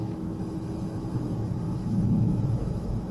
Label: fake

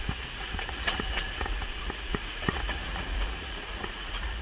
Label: fake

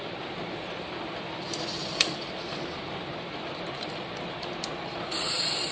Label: real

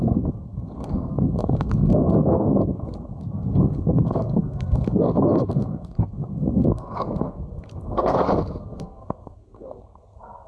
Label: fake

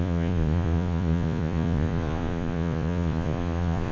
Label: fake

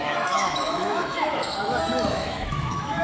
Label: fake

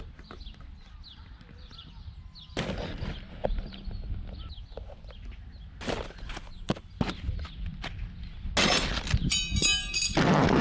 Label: real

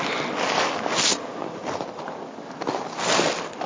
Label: real